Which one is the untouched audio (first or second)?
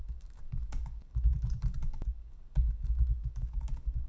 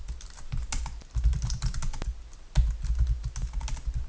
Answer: second